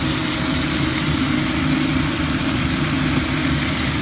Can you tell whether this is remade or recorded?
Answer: remade